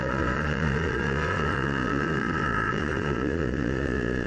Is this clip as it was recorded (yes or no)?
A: no